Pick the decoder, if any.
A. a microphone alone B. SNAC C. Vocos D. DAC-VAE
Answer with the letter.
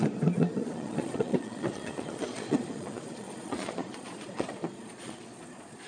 C